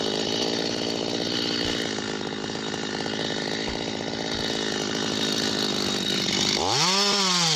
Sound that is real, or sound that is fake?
real